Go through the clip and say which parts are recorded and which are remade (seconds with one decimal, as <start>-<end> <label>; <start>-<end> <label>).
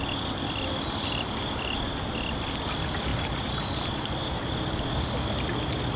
0.0-3.1 recorded; 3.1-4.4 remade; 4.4-6.0 recorded